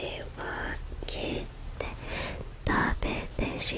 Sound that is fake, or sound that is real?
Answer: real